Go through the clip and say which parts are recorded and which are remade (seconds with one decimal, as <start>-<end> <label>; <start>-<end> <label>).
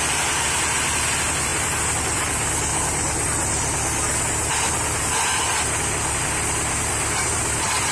0.0-7.9 recorded